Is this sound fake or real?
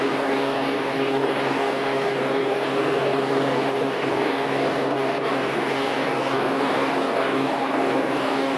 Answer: fake